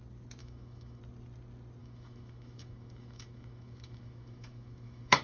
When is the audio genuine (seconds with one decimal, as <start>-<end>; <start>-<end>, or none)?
0.0-0.4; 1.0-1.8